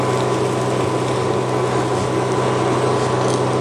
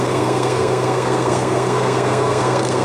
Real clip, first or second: first